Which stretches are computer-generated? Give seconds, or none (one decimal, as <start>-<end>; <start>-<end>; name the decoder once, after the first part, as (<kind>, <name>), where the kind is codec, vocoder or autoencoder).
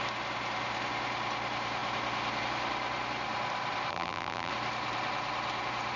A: 3.9-4.5 (vocoder, BigVGAN v2)